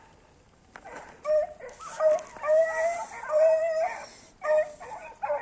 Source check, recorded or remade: recorded